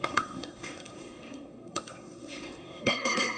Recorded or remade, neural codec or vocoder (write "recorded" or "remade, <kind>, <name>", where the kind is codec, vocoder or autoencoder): remade, codec, SNAC